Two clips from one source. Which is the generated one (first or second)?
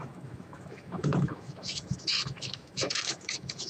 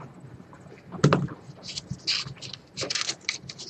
first